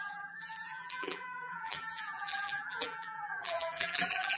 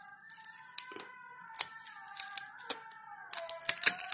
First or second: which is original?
second